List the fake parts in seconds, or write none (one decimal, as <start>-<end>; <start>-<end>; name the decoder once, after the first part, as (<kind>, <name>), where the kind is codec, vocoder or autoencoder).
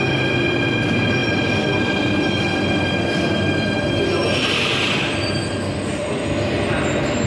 none